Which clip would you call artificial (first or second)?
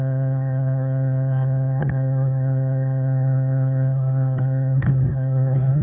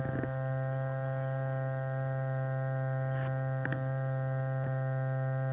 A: first